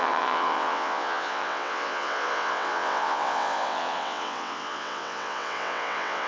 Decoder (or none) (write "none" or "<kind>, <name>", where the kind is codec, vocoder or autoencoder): vocoder, WaveNeXt